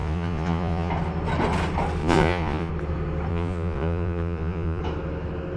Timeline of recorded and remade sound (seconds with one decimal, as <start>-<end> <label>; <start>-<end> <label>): 0.0-0.9 remade; 0.9-2.0 recorded; 2.0-2.7 remade; 2.7-3.3 recorded; 3.3-4.8 remade; 4.8-5.6 recorded